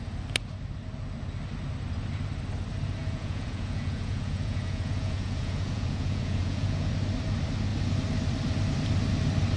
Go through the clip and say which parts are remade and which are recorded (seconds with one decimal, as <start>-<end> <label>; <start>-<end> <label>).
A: 0.0-3.0 recorded; 3.0-6.9 remade; 6.9-9.6 recorded